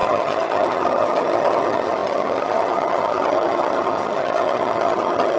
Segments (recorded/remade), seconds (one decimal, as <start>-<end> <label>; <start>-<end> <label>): 0.0-5.4 remade